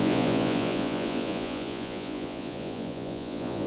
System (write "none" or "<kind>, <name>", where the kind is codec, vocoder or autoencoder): vocoder, Vocos